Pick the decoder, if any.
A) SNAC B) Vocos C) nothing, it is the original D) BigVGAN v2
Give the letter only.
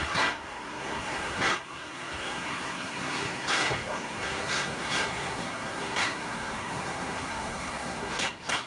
A